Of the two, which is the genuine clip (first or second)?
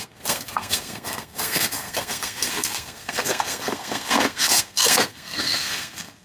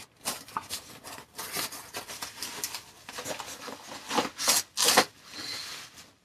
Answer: second